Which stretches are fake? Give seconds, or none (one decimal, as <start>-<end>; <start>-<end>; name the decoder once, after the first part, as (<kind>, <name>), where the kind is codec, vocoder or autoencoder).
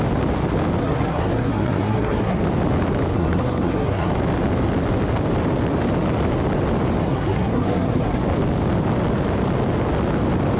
0.8-2.4 (codec, SNAC); 3.1-4.1; 7.0-8.2